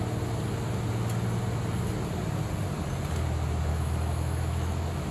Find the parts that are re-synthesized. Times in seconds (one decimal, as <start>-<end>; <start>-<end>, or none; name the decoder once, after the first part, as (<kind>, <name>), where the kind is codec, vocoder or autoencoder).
3.7-5.1 (autoencoder, DAC-VAE)

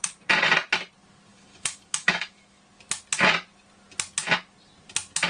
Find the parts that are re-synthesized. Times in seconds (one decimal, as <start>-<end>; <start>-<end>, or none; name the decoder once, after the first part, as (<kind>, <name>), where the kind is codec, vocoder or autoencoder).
1.3-2.6 (autoencoder, DAC-VAE)

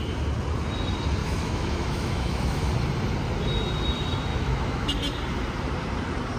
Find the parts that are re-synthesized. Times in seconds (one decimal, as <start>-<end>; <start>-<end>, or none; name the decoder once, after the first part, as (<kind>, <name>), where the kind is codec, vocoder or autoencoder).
1.2-2.7 (autoencoder, DAC-VAE); 4.3-4.9

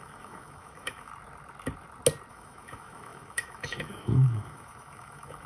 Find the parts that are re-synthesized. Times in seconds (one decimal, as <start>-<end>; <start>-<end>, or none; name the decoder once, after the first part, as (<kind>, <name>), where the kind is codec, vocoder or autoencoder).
0.0-1.1 (autoencoder, DAC-VAE); 2.3-5.5

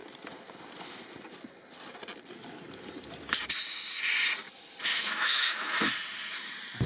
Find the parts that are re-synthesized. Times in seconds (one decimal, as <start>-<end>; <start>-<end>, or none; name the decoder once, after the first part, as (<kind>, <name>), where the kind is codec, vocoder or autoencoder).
4.9-5.9 (autoencoder, DAC-VAE)

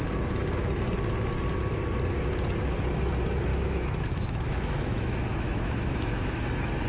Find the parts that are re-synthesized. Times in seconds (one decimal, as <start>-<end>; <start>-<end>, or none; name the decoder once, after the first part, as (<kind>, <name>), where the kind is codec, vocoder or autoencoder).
3.5-6.4 (autoencoder, DAC-VAE)